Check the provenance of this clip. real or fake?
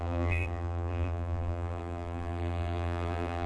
fake